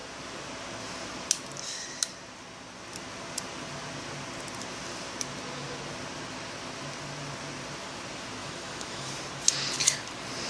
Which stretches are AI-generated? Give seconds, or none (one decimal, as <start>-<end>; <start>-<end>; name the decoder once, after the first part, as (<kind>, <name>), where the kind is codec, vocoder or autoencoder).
8.4-9.1 (autoencoder, DAC-VAE)